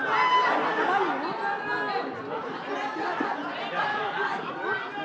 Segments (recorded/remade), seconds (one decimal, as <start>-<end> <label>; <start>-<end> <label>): 0.0-3.9 recorded; 3.9-4.5 remade; 4.5-5.0 recorded